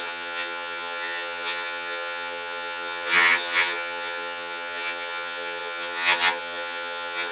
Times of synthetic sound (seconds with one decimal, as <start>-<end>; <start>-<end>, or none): 0.0-7.3